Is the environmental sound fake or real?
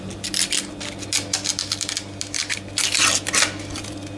real